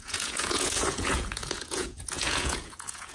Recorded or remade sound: remade